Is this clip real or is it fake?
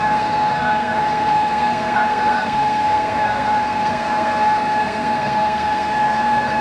fake